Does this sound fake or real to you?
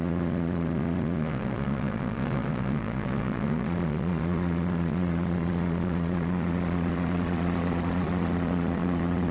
fake